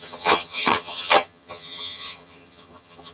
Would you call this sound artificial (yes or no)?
yes